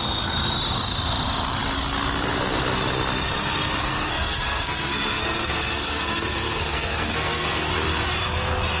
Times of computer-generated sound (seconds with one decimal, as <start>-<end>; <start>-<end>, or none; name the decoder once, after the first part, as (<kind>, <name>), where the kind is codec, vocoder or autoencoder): 3.8-7.7 (codec, SNAC)